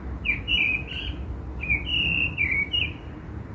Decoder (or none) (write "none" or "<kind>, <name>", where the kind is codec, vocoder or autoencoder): none